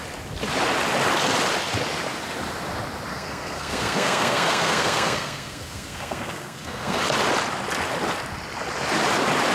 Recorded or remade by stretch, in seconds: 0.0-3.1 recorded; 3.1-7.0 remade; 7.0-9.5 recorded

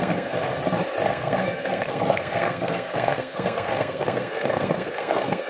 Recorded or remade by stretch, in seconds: 0.0-0.5 remade; 0.5-1.1 recorded; 1.1-5.5 remade

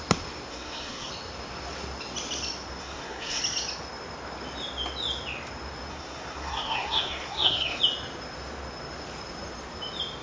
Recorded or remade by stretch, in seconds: 0.0-0.5 recorded; 0.5-1.1 remade; 1.1-2.8 recorded; 2.8-3.4 remade; 3.4-5.9 recorded; 5.9-7.8 remade; 7.8-10.2 recorded